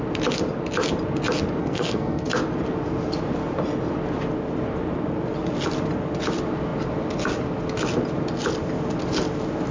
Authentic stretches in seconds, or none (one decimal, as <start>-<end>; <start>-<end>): 0.0-1.6; 2.3-9.7

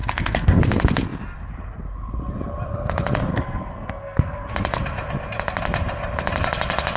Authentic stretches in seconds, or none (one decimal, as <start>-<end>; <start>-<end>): 0.6-3.3; 4.5-7.0

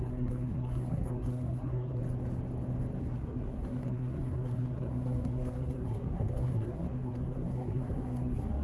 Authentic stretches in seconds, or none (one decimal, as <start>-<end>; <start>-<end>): 2.0-3.0